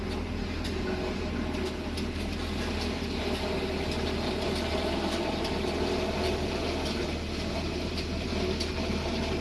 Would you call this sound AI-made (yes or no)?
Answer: no